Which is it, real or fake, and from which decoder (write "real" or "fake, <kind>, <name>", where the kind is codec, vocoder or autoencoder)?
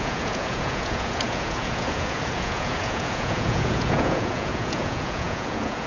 fake, vocoder, Vocos